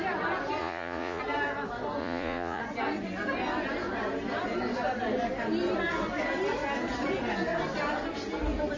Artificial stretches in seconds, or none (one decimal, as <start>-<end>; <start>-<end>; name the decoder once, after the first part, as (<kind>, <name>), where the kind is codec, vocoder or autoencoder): 0.6-1.2 (vocoder, Vocos); 2.0-2.6